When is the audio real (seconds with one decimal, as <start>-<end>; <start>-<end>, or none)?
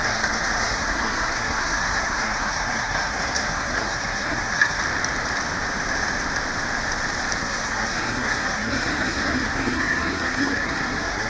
4.8-7.4